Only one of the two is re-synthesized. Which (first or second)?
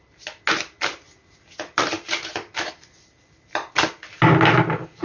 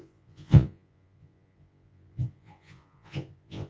second